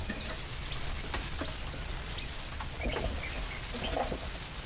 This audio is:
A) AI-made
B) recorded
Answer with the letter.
B